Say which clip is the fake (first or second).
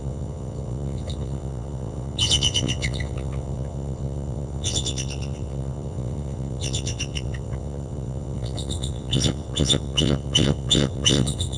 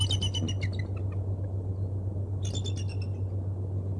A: first